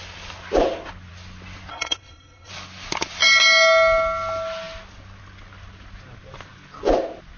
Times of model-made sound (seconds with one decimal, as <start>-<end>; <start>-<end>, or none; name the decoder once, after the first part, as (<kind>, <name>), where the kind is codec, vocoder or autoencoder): 1.7-2.5 (codec, SNAC)